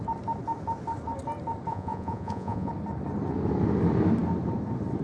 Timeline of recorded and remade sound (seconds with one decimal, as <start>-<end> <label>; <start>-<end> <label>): 0.0-1.7 recorded; 1.7-2.7 remade; 2.7-5.0 recorded